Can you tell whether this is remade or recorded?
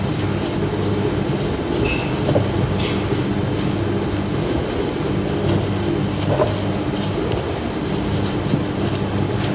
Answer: recorded